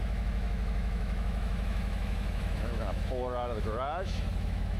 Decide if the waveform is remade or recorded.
remade